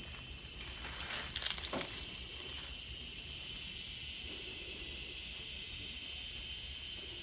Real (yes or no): yes